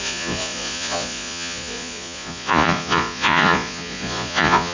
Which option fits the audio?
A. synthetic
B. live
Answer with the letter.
A